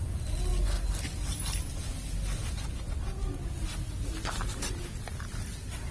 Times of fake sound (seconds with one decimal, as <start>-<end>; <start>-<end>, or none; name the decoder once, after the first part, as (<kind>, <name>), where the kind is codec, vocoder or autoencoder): none